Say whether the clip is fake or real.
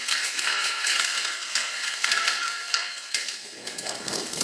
fake